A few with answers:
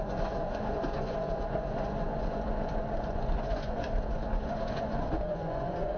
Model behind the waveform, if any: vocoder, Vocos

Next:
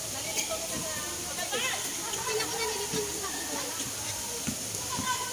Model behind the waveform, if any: none